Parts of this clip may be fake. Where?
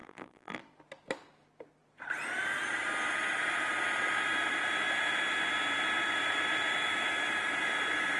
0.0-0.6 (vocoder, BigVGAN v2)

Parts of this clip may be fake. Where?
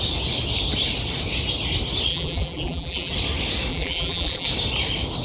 2.1-3.1 (vocoder, BigVGAN v2); 3.7-4.5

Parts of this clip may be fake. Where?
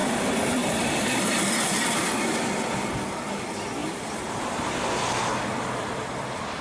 0.0-2.7 (vocoder, BigVGAN v2); 3.8-6.6